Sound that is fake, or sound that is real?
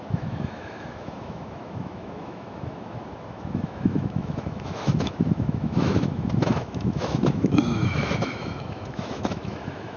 fake